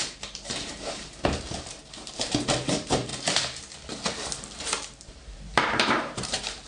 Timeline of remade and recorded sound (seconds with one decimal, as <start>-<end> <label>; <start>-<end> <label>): 0.0-3.1 remade; 3.1-5.0 recorded; 5.0-6.7 remade